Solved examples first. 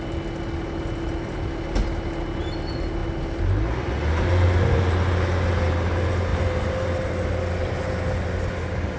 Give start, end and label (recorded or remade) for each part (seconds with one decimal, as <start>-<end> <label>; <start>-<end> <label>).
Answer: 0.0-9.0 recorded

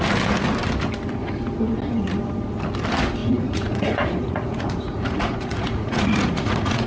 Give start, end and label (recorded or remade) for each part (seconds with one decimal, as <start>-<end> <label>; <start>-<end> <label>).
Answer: 0.0-3.2 recorded; 3.2-6.9 remade

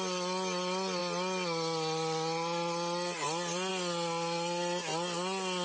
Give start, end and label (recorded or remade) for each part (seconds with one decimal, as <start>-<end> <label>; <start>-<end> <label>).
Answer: 0.0-5.6 recorded

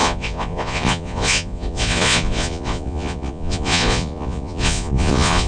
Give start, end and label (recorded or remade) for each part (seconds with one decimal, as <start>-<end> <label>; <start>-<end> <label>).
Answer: 0.0-5.5 remade

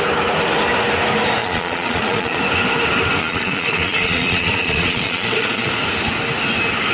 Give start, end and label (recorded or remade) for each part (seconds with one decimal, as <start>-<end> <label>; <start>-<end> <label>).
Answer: 0.0-1.4 recorded; 1.4-2.4 remade; 2.4-3.2 recorded; 3.2-5.7 remade; 5.7-6.9 recorded

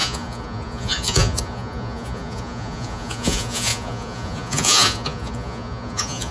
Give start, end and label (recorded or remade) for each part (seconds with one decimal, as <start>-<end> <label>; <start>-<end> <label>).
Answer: 0.0-6.3 remade